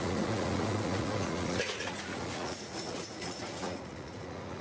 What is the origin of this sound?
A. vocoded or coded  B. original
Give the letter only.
A